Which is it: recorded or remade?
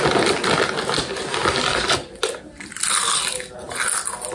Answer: recorded